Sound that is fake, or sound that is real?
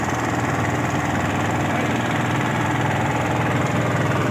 real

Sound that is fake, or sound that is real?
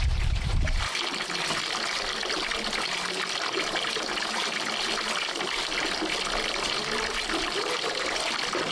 real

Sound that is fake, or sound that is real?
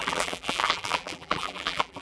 fake